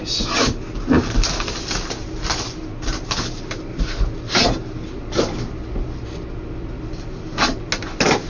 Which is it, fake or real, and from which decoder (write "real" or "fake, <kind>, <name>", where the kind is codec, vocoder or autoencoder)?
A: real